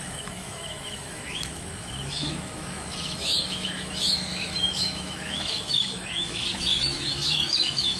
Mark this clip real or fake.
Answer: fake